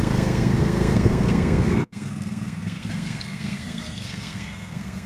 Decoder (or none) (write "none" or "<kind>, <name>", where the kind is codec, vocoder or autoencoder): codec, SNAC